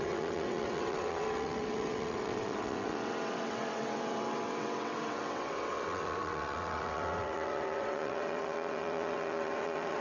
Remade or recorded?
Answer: remade